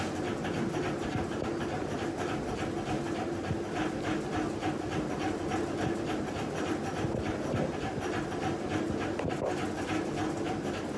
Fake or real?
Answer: real